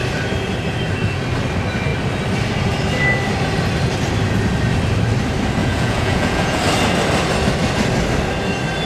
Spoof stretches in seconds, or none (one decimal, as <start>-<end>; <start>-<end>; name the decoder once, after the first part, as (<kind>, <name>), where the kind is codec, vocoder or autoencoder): 5.6-6.6 (vocoder, Vocos)